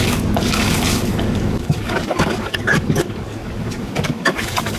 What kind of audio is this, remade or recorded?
remade